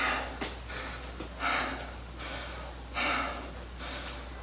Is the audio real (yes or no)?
yes